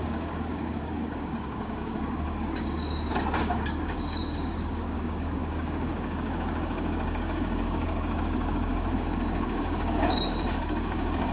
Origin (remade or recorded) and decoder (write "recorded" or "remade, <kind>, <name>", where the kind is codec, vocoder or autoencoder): remade, codec, DAC